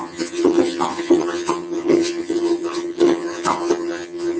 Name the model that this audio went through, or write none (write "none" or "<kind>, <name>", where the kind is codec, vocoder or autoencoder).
vocoder, HiFi-GAN